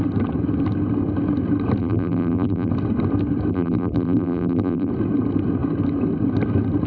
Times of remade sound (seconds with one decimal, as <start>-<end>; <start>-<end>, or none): 1.8-2.7; 3.5-4.9